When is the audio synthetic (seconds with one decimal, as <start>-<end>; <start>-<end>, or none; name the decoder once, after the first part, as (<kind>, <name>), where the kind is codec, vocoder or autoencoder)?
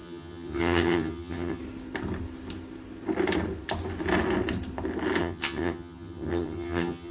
0.0-1.6 (vocoder, HiFi-GAN); 5.2-7.1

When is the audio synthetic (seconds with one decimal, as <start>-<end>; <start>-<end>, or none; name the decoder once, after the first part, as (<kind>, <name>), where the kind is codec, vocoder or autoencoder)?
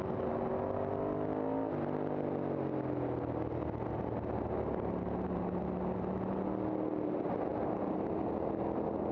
7.5-8.3 (vocoder, BigVGAN v2)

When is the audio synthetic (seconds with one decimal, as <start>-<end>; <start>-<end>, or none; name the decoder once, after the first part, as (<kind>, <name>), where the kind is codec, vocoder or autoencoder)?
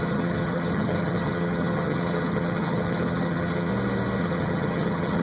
0.0-3.7 (vocoder, HiFi-GAN); 4.2-5.2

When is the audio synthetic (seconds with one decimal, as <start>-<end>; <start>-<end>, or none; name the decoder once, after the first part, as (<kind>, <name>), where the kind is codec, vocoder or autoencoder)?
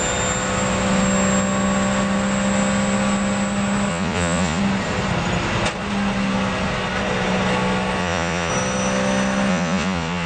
3.9-4.6 (vocoder, Vocos); 8.0-8.5; 9.5-10.3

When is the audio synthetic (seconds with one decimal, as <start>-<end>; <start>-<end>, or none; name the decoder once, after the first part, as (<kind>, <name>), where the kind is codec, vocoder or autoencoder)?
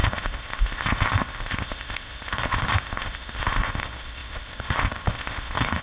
0.0-5.8 (codec, ZipCodec)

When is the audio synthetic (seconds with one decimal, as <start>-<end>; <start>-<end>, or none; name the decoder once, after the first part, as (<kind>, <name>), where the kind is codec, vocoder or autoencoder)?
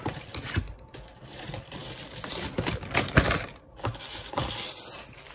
0.0-1.8 (vocoder, BigVGAN v2); 4.0-5.3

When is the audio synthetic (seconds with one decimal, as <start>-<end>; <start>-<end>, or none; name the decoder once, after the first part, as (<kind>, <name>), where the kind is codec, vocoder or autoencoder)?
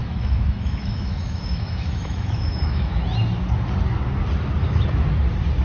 0.0-3.0 (autoencoder, DAC-VAE)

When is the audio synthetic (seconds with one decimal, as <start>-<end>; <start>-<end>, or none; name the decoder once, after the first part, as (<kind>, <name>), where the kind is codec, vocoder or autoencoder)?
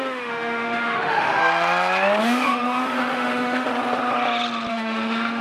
0.0-1.4 (autoencoder, DAC-VAE); 2.2-3.7; 4.7-5.4